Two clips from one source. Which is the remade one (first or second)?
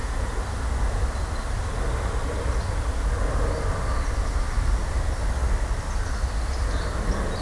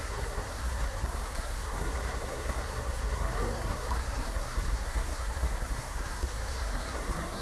second